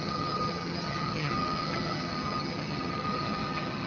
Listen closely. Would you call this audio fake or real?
fake